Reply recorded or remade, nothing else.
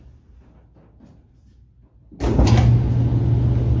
recorded